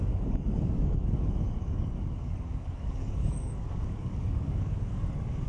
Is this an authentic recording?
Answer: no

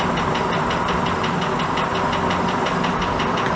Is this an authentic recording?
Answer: yes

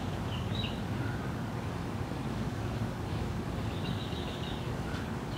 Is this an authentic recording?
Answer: no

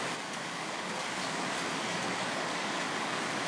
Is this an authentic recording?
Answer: no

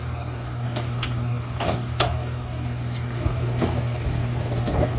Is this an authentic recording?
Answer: no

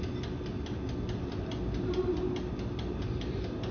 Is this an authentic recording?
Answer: yes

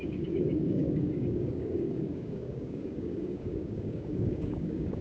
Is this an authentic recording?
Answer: no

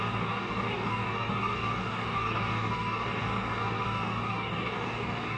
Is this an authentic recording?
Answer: no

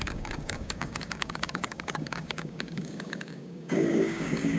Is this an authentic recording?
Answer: no